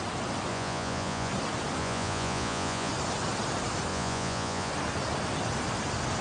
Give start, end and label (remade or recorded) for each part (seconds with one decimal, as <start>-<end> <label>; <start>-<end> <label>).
0.0-0.5 recorded; 0.5-1.3 remade; 1.3-1.8 recorded; 1.8-2.9 remade; 2.9-3.9 recorded; 3.9-4.7 remade; 4.7-6.2 recorded